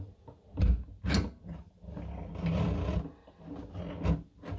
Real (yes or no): yes